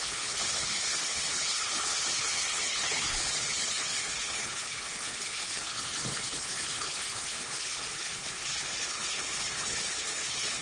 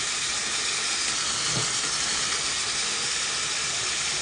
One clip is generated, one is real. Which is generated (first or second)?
first